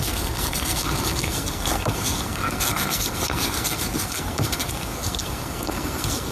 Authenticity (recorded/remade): remade